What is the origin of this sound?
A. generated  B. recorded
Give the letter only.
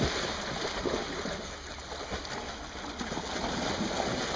B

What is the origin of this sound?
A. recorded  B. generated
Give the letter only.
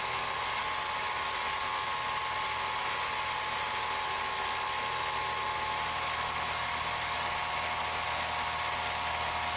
A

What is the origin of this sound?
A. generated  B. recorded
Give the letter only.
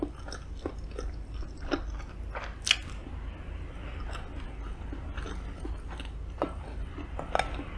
B